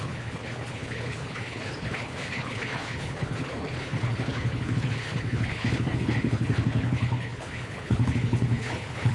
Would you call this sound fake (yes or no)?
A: yes